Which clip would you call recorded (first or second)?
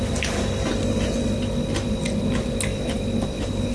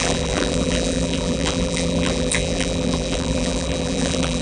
first